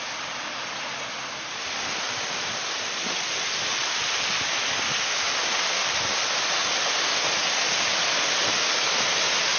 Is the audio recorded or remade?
recorded